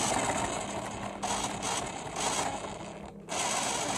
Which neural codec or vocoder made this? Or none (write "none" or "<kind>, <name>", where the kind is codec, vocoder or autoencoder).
none